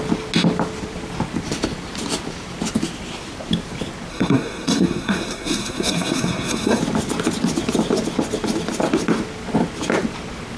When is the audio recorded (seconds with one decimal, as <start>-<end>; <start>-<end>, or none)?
0.0-4.1; 6.8-10.6